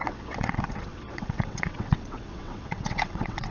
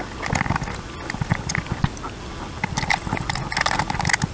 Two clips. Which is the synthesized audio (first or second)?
first